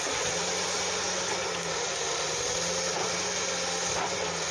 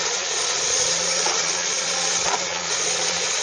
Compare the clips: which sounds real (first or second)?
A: first